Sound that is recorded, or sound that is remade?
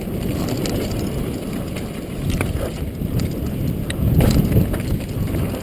recorded